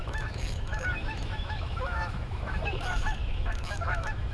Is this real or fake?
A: fake